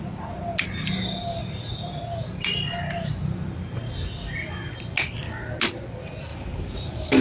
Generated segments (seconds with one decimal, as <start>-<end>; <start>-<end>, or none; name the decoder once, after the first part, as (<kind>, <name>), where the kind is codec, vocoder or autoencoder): 6.3-7.2 (vocoder, BigVGAN v2)

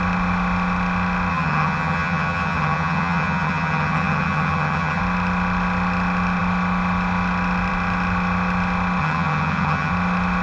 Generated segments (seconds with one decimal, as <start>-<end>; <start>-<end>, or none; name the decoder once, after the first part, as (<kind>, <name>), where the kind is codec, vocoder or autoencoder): 1.3-5.0 (vocoder, HiFi-GAN); 9.0-9.9

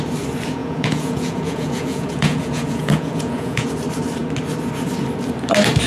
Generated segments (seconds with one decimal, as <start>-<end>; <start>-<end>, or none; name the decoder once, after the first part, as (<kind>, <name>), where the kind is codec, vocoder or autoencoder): 0.6-3.7 (vocoder, Vocos)

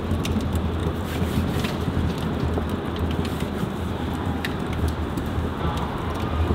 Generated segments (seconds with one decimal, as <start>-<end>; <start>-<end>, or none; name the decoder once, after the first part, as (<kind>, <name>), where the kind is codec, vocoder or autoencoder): 3.3-5.6 (vocoder, BigVGAN v2)

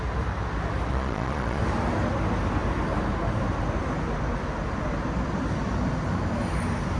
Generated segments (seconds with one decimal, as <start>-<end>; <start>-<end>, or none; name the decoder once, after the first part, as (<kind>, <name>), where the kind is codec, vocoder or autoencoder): 0.9-1.6 (vocoder, Vocos)

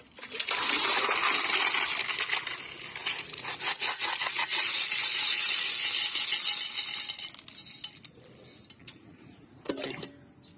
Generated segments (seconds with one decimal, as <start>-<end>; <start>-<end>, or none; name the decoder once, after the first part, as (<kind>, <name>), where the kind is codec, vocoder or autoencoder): 3.0-4.9 (vocoder, Vocos); 8.8-9.7

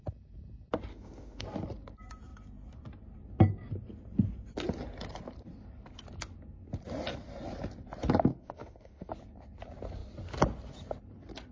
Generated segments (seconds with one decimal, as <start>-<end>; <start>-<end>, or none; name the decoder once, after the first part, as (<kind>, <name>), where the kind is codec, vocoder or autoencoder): 0.9-1.4 (autoencoder, DAC-VAE); 8.3-9.1